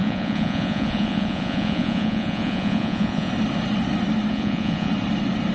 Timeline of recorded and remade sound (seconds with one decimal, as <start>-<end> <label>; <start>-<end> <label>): 0.0-3.3 remade; 3.3-4.3 recorded; 4.3-4.9 remade; 4.9-5.5 recorded